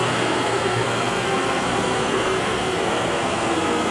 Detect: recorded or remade remade